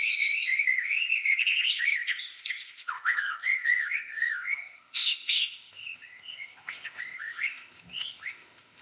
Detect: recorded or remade remade